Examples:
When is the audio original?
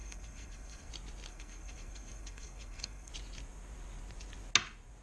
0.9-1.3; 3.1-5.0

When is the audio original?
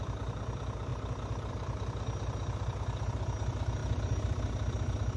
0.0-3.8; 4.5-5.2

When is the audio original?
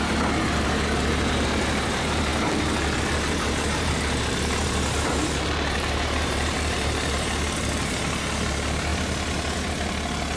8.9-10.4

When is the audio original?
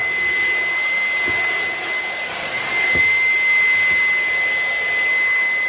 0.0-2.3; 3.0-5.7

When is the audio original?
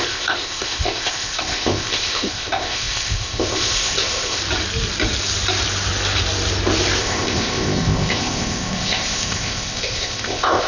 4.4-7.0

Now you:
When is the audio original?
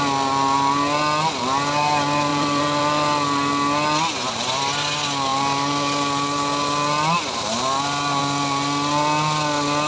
0.0-2.3; 2.8-9.9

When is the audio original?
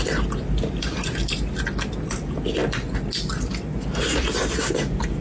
0.0-5.2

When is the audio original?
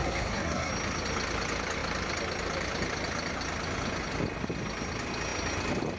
0.7-6.0